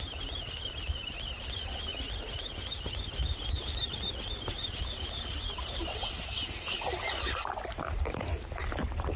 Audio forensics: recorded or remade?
recorded